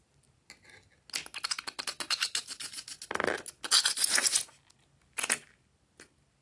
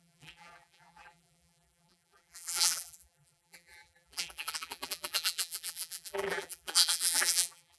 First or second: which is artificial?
second